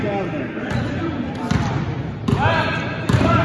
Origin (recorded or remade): recorded